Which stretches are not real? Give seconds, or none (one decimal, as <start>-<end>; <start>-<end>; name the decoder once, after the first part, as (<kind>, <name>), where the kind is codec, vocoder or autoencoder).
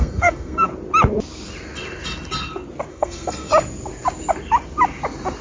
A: 0.0-0.7 (codec, SNAC); 2.9-3.5